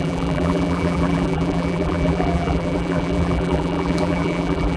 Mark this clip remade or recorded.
remade